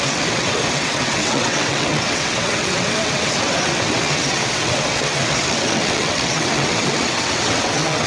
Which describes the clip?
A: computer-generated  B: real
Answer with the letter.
A